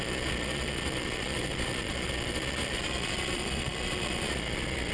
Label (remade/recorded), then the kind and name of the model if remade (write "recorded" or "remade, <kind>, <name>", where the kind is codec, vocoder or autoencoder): remade, vocoder, Vocos